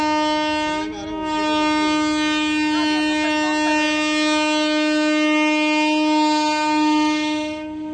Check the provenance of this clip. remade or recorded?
recorded